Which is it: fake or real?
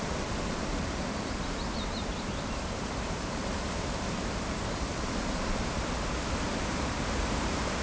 fake